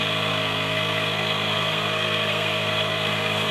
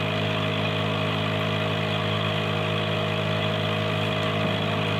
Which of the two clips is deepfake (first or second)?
first